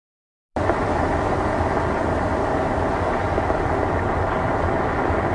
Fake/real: real